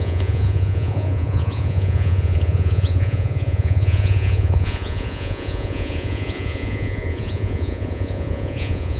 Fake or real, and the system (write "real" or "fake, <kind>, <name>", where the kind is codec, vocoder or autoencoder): fake, vocoder, Vocos